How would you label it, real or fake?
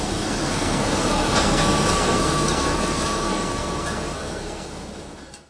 fake